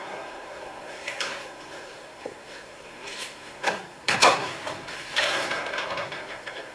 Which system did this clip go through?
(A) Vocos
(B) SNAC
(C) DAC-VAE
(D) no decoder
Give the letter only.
B